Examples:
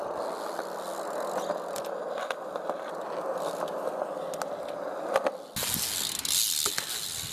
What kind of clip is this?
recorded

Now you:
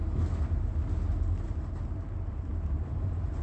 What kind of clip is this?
recorded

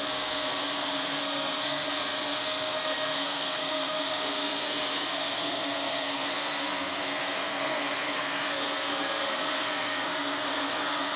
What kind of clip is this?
remade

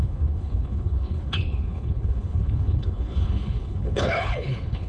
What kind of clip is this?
remade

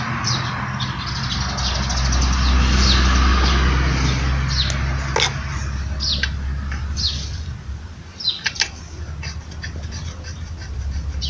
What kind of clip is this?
recorded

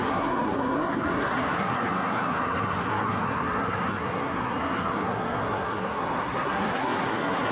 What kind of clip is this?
remade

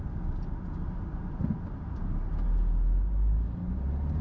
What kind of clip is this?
recorded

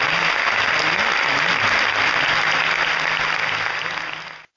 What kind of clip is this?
recorded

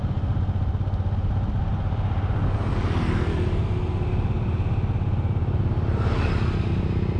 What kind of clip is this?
recorded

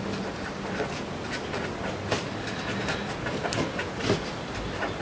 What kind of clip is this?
recorded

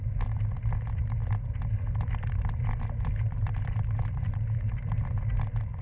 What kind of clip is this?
recorded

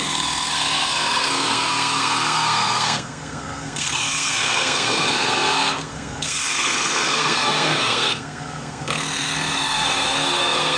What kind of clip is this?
remade